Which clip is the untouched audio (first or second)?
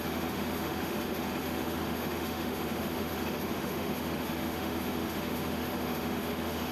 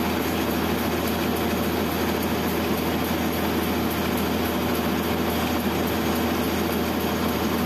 second